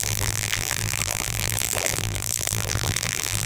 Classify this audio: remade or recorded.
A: remade